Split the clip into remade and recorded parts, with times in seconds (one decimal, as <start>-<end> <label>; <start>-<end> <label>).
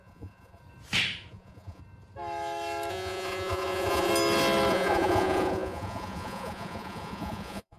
0.0-0.6 remade; 0.6-1.3 recorded; 1.3-1.8 remade; 1.8-2.9 recorded; 2.9-4.1 remade; 4.1-4.7 recorded; 4.7-7.8 remade